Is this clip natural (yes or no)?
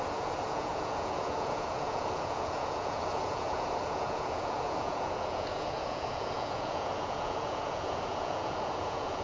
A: no